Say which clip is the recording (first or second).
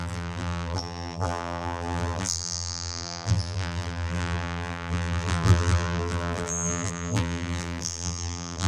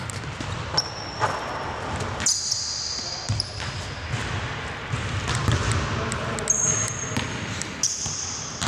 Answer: second